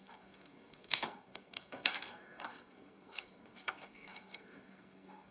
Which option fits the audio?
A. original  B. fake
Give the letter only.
B